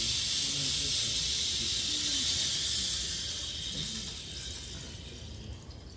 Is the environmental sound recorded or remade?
recorded